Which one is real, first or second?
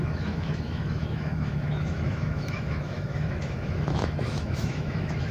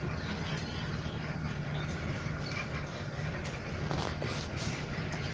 second